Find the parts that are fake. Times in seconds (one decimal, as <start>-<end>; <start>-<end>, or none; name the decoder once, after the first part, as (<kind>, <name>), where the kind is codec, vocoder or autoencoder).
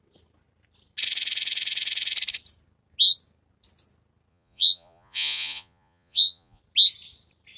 4.3-6.6 (vocoder, Vocos)